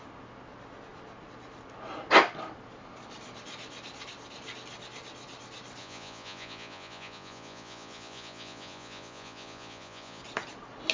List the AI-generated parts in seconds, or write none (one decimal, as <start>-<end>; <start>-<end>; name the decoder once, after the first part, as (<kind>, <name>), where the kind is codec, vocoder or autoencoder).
5.8-10.2 (vocoder, Vocos)